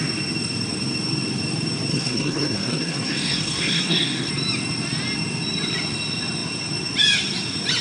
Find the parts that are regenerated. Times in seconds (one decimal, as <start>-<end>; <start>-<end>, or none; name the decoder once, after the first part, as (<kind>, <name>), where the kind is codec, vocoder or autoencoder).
1.9-4.3 (codec, SNAC)